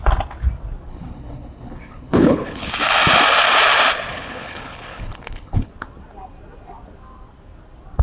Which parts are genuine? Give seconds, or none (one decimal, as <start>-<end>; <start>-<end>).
0.0-0.9; 2.7-4.1; 5.7-8.0